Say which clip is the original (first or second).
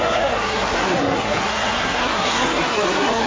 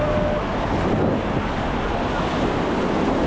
second